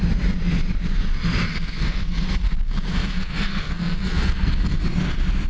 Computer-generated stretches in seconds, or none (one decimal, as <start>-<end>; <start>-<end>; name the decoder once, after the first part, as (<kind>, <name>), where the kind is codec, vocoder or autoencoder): 1.5-4.8 (codec, SNAC)